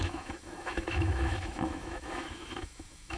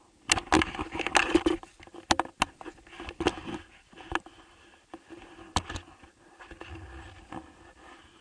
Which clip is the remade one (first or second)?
first